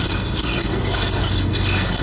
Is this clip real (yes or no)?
no